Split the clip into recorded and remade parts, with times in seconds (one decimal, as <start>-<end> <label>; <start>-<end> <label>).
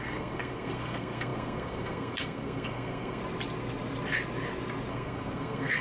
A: 0.0-3.2 remade; 3.2-4.9 recorded; 4.9-5.8 remade